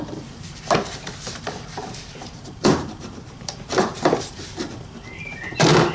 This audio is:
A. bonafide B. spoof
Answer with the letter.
B